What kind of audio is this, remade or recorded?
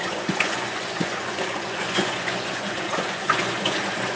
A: remade